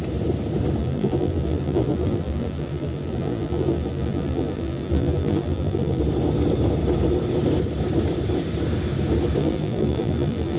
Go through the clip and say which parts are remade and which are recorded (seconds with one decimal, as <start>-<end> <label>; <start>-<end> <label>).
0.0-0.8 recorded; 0.8-6.0 remade; 6.0-9.4 recorded; 9.4-10.6 remade

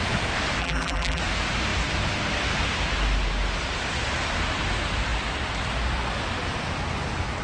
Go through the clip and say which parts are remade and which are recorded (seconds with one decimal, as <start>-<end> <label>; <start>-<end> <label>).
0.0-0.6 recorded; 0.6-1.2 remade; 1.2-7.4 recorded

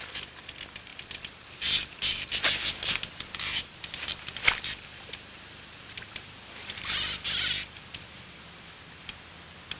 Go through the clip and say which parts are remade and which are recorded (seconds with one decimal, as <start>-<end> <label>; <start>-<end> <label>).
0.0-0.9 recorded; 0.9-6.1 remade; 6.1-9.8 recorded

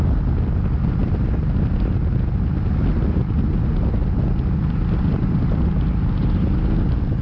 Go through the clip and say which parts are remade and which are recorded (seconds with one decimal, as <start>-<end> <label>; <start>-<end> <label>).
0.0-7.2 recorded

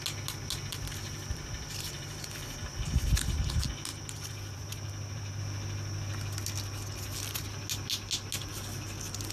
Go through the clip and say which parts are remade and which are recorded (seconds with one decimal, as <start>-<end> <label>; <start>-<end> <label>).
0.0-0.7 recorded; 0.7-3.1 remade; 3.1-3.9 recorded; 3.9-5.4 remade; 5.4-9.3 recorded

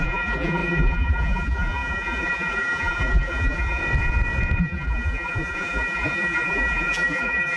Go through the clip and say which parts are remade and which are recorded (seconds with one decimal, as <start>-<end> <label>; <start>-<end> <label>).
0.0-3.8 remade; 3.8-4.6 recorded; 4.6-7.6 remade

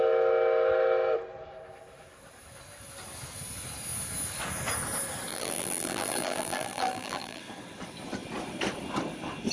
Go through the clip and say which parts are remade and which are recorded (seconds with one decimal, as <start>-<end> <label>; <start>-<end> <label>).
0.0-5.3 recorded; 5.3-7.4 remade; 7.4-9.5 recorded

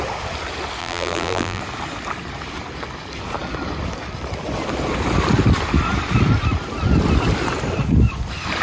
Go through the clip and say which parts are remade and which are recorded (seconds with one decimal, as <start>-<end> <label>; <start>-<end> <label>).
0.0-0.8 recorded; 0.8-1.6 remade; 1.6-8.6 recorded